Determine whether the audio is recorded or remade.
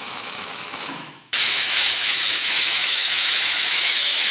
remade